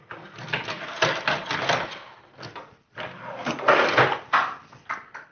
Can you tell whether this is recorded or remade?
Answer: recorded